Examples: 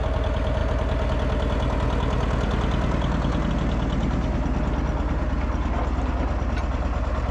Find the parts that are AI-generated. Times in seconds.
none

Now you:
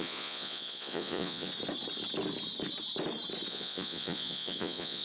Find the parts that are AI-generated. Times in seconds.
0.0-1.5 (vocoder, Vocos); 3.5-5.0

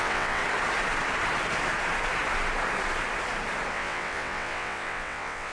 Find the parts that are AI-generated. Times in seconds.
0.0-0.4 (vocoder, WaveNeXt); 3.7-5.5

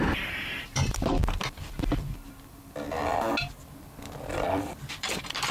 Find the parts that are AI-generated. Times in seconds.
0.0-1.2 (vocoder, BigVGAN v2); 4.5-5.5

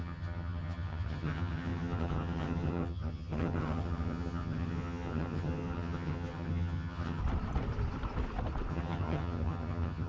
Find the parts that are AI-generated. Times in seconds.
0.0-7.2 (vocoder, HiFi-GAN); 8.7-10.1

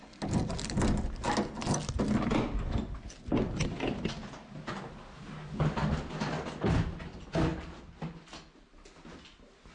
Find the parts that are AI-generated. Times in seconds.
none

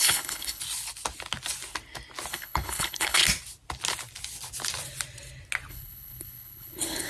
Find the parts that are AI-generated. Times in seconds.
0.0-0.6 (codec, HILCodec); 2.3-3.2; 5.7-7.1